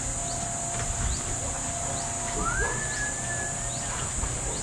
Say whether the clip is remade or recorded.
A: recorded